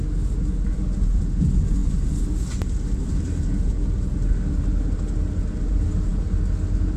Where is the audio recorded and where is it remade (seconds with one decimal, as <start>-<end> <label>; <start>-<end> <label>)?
0.0-7.0 recorded